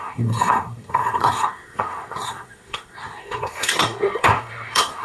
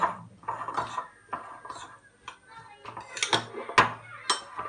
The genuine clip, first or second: second